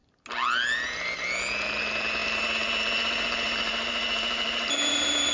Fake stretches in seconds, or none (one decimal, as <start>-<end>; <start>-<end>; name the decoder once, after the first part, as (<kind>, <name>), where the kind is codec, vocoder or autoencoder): 2.2-5.3 (vocoder, BigVGAN v2)